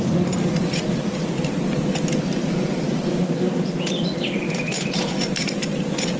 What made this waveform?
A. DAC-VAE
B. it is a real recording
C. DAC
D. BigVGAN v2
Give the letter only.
B